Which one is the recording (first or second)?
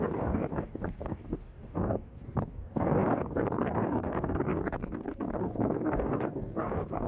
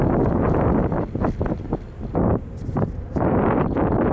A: second